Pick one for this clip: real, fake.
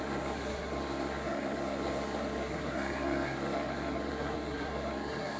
fake